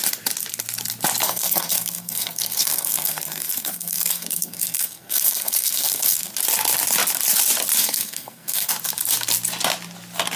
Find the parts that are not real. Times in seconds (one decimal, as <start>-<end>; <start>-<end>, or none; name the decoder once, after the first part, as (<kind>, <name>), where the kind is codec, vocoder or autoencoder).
1.2-6.3 (codec, SNAC); 7.7-8.7